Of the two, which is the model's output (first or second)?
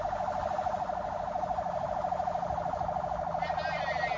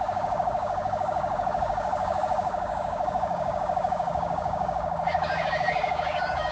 second